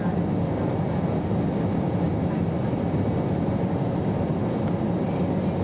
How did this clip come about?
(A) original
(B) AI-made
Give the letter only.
A